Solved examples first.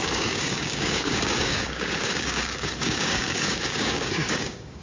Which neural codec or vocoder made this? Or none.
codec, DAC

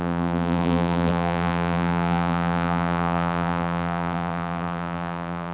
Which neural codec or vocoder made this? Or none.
vocoder, BigVGAN v2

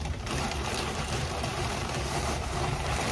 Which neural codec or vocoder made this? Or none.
vocoder, BigVGAN v2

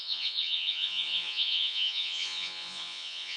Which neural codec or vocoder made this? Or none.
vocoder, Vocos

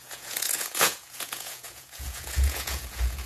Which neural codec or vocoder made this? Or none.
vocoder, Vocos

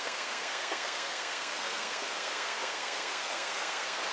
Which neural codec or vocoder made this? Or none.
codec, SNAC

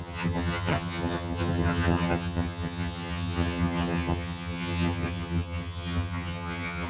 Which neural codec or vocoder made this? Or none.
vocoder, HiFi-GAN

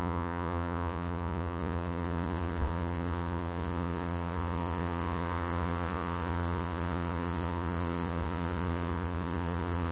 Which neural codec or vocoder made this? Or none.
vocoder, Vocos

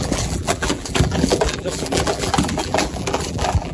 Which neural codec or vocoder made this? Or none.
vocoder, BigVGAN v2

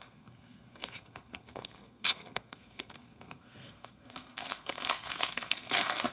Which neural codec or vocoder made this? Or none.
codec, SNAC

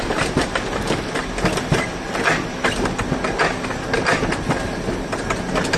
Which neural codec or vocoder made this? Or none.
none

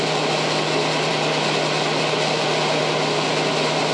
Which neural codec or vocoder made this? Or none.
none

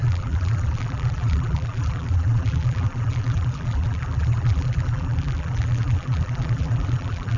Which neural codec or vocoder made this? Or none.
vocoder, BigVGAN v2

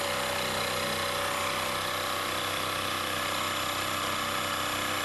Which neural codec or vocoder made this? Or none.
none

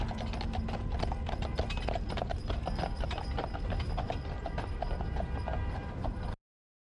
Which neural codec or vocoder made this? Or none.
none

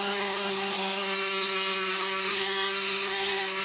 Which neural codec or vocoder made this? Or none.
codec, SNAC